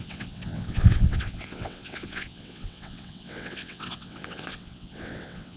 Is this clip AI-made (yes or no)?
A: yes